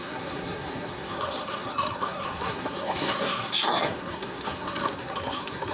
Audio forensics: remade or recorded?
remade